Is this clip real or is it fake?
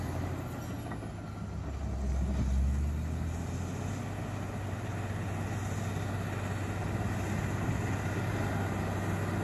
real